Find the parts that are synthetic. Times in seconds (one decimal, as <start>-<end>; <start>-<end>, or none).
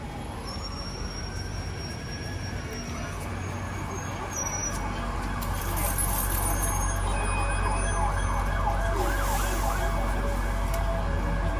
none